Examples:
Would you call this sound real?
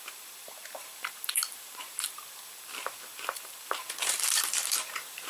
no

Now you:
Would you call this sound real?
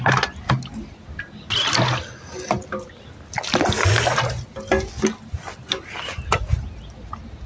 yes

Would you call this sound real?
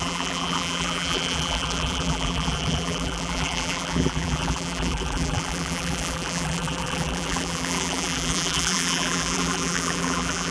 no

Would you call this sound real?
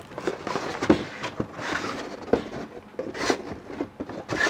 yes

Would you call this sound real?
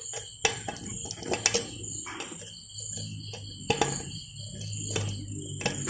yes